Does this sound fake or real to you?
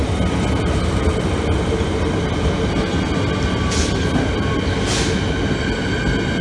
real